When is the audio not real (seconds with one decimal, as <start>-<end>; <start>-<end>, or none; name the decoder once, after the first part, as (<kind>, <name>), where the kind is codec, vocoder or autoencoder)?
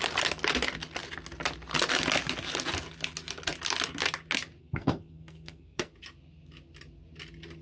4.6-5.9 (codec, SNAC)